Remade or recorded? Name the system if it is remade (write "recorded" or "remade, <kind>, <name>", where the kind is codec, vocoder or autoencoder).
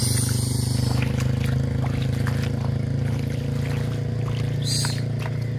recorded